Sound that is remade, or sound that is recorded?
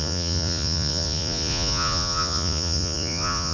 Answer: remade